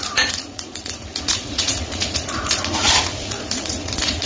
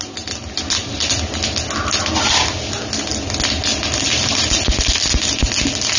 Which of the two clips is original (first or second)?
second